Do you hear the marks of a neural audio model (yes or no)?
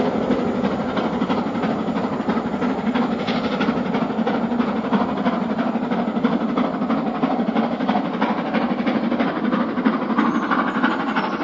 no